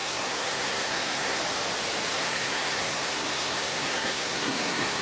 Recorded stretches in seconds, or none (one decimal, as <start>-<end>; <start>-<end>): 1.4-2.1